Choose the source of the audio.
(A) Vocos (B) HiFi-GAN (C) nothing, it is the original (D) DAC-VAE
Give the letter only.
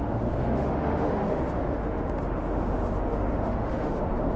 D